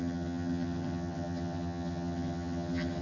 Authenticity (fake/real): fake